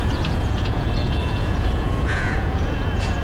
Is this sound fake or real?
fake